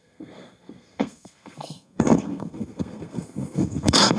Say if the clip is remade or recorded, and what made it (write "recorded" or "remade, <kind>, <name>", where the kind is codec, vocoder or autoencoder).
remade, codec, SNAC